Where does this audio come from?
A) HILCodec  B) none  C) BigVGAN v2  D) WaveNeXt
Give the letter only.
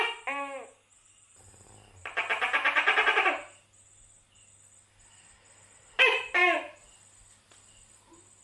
B